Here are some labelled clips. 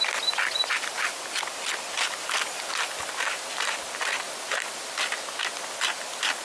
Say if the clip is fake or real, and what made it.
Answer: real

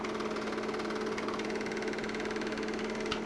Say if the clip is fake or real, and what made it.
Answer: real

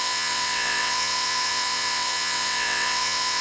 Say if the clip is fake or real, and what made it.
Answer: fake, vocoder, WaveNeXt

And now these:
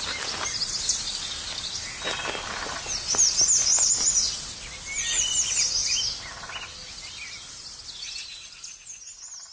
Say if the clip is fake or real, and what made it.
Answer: real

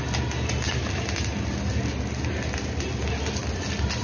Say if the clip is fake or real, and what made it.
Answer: real